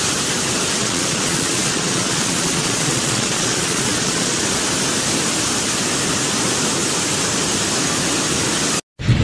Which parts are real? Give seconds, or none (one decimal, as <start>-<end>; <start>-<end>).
0.0-0.8; 4.4-9.2